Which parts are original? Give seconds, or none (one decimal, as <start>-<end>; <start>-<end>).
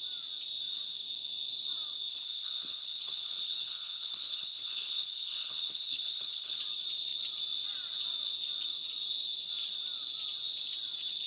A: 0.0-2.1; 6.6-11.3